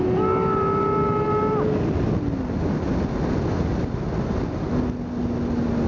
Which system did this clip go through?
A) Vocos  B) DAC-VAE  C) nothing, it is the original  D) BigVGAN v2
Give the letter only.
C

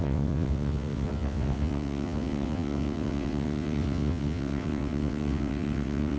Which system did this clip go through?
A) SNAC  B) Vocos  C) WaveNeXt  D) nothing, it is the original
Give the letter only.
C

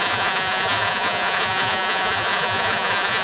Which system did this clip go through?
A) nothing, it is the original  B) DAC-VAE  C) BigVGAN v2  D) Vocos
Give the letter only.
D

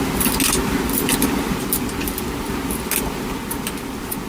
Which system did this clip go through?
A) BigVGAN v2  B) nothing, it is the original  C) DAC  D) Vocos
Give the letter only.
B